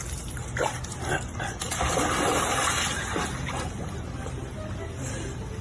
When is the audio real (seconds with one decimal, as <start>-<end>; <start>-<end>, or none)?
0.0-5.6